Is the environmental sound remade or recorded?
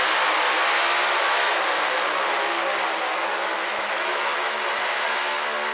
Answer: recorded